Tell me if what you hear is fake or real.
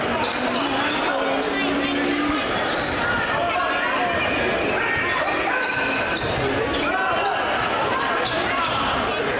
real